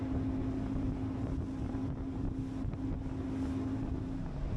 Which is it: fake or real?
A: real